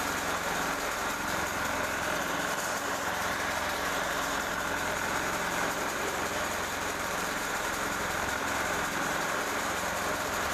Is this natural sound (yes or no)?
no